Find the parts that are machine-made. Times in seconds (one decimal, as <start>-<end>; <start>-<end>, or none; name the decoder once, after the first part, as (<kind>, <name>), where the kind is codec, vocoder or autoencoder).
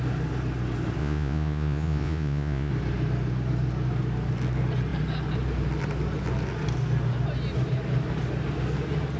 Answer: 1.0-2.7 (vocoder, Vocos)